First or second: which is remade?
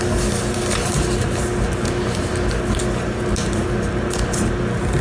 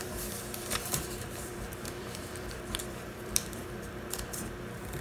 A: second